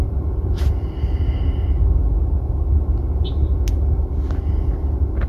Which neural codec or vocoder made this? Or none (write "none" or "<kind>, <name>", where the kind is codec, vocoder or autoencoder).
none